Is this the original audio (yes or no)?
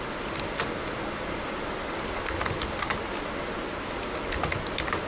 yes